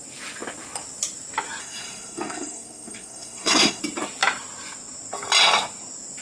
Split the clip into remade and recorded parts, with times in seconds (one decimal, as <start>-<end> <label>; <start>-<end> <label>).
0.0-1.6 recorded; 1.6-3.8 remade; 3.8-6.2 recorded